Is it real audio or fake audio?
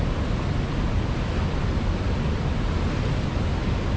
real